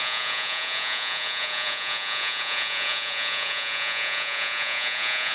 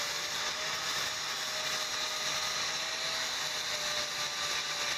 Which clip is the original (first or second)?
second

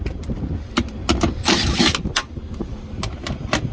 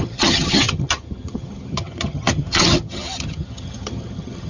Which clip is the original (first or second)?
first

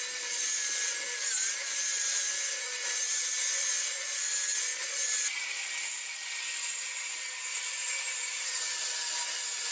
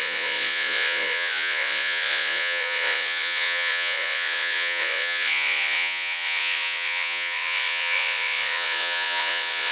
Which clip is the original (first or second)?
first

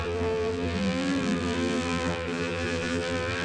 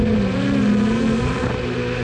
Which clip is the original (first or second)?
second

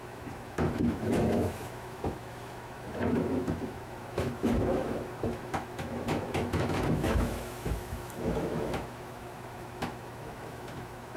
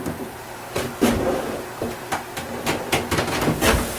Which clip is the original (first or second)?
second